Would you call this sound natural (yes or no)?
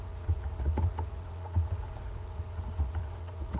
no